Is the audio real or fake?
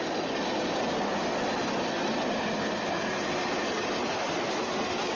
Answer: real